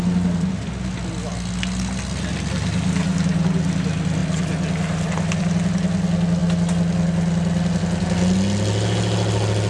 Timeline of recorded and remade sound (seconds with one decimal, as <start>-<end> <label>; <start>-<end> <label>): 0.0-9.7 recorded